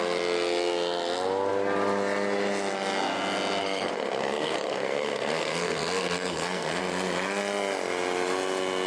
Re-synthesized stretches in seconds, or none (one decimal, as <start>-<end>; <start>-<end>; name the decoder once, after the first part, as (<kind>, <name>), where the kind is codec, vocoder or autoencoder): 3.6-6.8 (codec, SNAC)